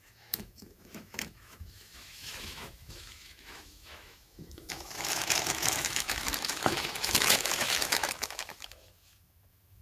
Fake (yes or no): yes